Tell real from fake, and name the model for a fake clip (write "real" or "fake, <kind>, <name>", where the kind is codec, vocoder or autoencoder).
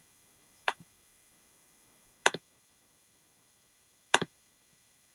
fake, autoencoder, DAC-VAE